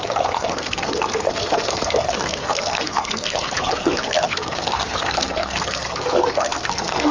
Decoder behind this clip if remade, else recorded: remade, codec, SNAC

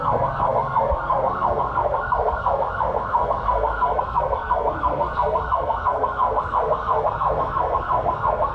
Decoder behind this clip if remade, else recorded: remade, codec, SNAC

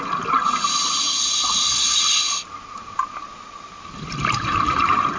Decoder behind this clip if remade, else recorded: recorded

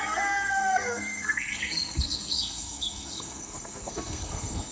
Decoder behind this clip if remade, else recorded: remade, codec, SNAC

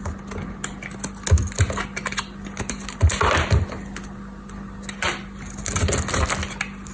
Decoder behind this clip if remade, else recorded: recorded